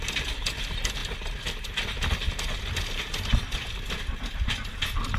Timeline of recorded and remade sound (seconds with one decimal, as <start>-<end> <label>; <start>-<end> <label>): 0.0-5.2 recorded